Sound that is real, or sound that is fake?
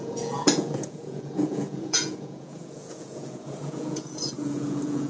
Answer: fake